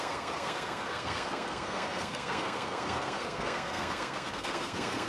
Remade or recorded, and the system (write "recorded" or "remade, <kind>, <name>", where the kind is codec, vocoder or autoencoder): remade, codec, SNAC